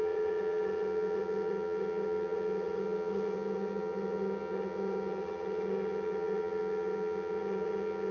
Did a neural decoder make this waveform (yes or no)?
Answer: yes